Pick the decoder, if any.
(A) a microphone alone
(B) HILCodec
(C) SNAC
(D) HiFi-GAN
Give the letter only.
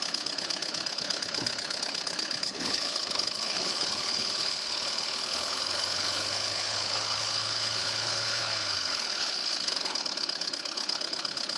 B